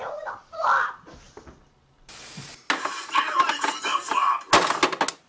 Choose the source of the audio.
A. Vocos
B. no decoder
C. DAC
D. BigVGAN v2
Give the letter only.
B